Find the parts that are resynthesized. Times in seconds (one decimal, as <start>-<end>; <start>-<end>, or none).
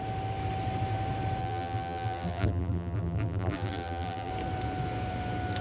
1.4-4.3